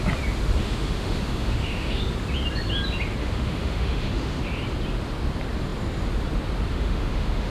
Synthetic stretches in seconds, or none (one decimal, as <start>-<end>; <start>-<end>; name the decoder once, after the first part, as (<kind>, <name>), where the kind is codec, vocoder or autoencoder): 0.6-2.0 (autoencoder, DAC-VAE); 3.2-4.4; 6.7-7.5